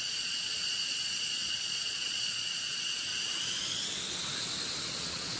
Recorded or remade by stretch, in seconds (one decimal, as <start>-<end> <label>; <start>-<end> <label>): 0.0-3.1 remade; 3.1-4.8 recorded; 4.8-5.4 remade